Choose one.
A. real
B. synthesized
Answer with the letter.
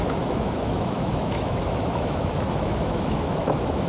B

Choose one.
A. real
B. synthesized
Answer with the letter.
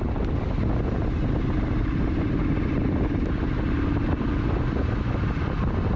A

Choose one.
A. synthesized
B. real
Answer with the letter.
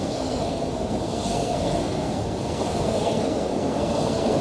A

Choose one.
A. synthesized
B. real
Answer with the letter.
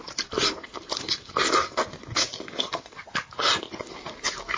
B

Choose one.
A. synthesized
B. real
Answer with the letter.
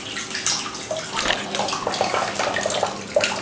B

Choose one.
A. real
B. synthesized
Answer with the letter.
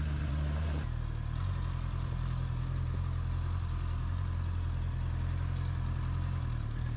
A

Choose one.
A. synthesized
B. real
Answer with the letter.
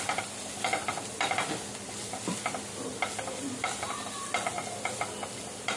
B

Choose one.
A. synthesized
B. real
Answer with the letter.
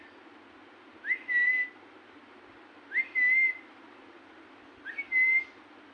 B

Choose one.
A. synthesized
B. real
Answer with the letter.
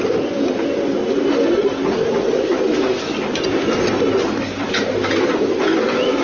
B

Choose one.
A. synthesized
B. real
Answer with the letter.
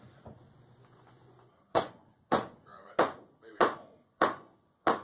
A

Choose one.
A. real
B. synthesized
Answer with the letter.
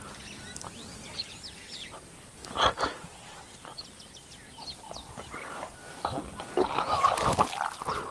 A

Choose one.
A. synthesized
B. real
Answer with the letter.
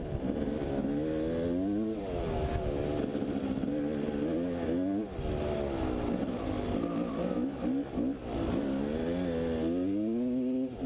B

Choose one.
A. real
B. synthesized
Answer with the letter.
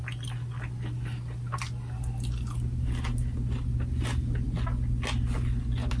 A